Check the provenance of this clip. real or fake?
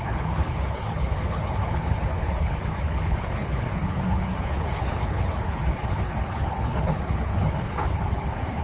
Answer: fake